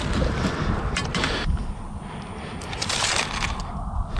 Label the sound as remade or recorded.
recorded